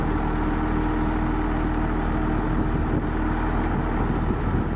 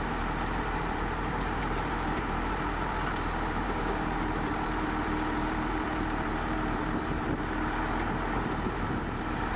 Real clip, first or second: first